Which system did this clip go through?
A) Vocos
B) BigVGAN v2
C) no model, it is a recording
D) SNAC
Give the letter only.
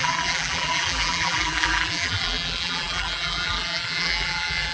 B